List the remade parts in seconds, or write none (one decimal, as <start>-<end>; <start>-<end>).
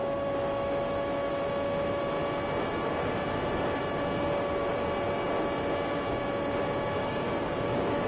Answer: 7.0-8.1